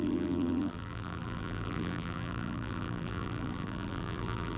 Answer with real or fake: fake